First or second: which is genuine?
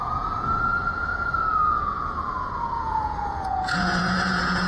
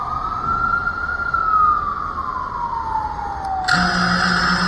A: second